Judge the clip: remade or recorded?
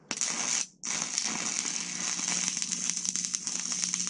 recorded